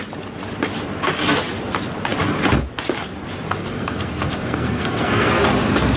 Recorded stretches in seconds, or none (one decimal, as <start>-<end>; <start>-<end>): 0.0-3.6; 5.3-6.0